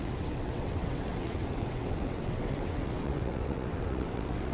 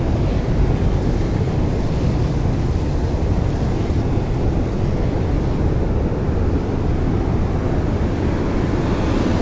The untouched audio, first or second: second